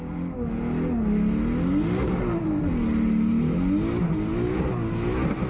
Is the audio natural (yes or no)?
yes